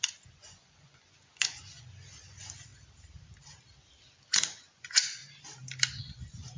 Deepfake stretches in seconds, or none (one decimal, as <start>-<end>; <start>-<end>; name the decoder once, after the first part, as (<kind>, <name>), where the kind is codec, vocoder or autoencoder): 0.0-2.7 (vocoder, Vocos); 4.3-5.2; 6.0-6.6